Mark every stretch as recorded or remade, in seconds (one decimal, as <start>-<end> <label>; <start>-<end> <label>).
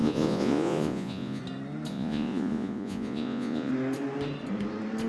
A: 0.0-1.4 remade; 1.4-1.9 recorded; 1.9-3.7 remade; 3.7-5.1 recorded